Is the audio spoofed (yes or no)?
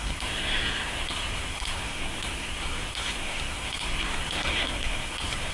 yes